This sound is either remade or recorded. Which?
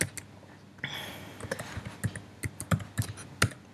recorded